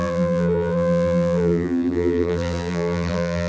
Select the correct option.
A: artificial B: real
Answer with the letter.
A